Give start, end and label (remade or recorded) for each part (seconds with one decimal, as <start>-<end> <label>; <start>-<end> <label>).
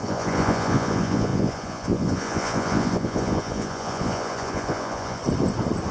0.0-5.2 remade; 5.2-5.9 recorded